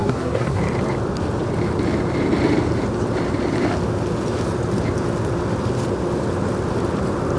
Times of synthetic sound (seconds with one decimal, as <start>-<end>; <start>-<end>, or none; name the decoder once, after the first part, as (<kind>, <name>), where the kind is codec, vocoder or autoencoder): 0.0-0.6 (codec, SNAC)